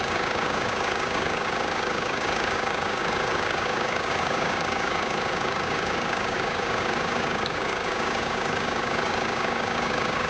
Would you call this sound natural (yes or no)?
no